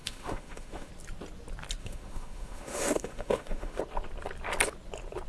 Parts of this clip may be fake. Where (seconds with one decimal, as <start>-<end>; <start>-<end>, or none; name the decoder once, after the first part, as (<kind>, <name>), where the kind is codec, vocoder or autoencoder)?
0.0-0.9 (autoencoder, DAC-VAE); 1.8-3.8